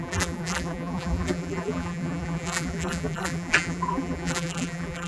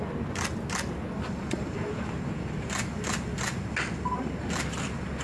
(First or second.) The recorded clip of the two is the second